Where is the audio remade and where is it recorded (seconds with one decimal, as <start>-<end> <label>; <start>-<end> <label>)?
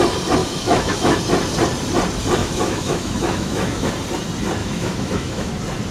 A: 0.0-0.4 recorded; 0.4-1.2 remade; 1.2-2.4 recorded; 2.4-3.9 remade; 3.9-4.6 recorded; 4.6-5.5 remade; 5.5-5.9 recorded